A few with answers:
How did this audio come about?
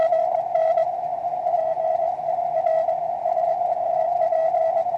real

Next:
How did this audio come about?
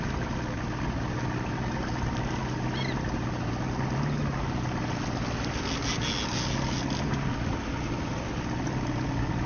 real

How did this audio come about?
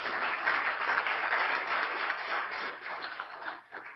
fake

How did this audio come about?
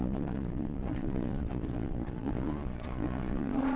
fake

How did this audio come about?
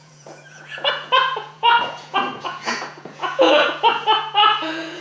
fake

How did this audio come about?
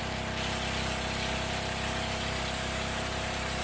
real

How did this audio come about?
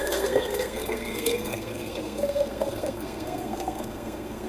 fake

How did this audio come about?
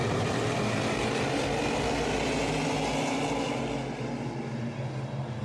real